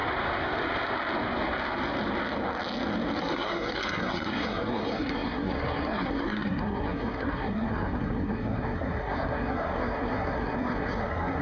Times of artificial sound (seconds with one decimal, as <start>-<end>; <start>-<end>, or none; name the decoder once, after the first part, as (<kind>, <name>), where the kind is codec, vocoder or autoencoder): 3.2-11.4 (codec, SNAC)